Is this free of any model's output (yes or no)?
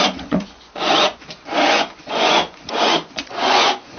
no